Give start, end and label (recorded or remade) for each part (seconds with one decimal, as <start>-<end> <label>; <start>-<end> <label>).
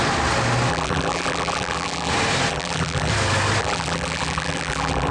0.0-0.7 recorded; 0.7-2.1 remade; 2.1-2.5 recorded; 2.5-3.1 remade; 3.1-3.6 recorded; 3.6-5.1 remade